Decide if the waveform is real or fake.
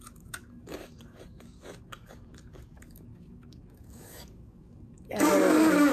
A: fake